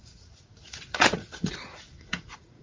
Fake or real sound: fake